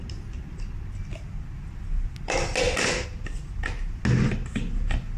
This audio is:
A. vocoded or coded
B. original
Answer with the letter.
B